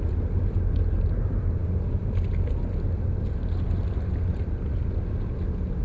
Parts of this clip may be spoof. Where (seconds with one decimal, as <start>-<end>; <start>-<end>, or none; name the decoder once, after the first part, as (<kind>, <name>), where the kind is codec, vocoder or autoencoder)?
none